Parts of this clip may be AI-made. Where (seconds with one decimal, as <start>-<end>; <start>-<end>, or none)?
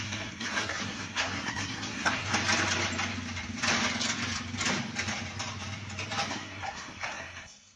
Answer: 0.0-2.3; 6.3-7.8